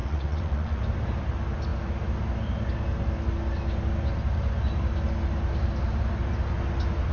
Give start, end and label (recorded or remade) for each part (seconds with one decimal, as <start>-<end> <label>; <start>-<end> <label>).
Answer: 0.0-0.8 remade; 0.8-7.1 recorded